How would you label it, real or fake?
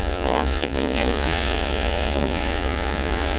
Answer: fake